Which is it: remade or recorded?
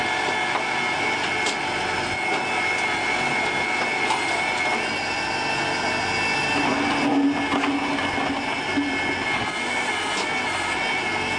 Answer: recorded